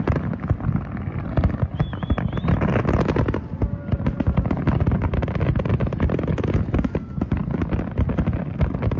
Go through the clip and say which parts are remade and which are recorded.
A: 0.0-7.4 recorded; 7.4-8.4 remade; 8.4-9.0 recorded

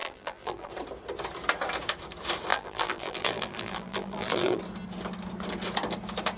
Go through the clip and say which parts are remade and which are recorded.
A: 0.0-0.7 remade; 0.7-2.5 recorded; 2.5-4.6 remade; 4.6-6.4 recorded